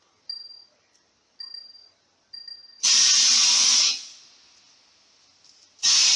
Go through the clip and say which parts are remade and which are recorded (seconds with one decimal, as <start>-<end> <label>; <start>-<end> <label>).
0.0-6.2 recorded